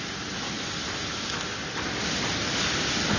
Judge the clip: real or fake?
real